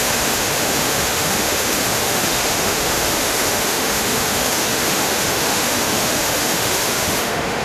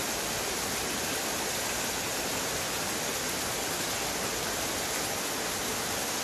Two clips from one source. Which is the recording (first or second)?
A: second